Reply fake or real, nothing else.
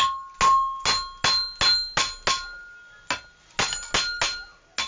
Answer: real